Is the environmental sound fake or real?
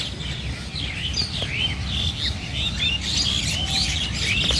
real